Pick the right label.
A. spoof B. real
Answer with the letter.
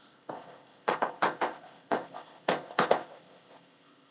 A